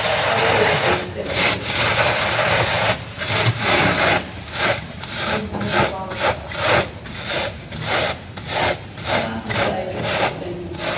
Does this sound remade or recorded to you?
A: recorded